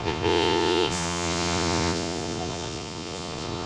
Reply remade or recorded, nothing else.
remade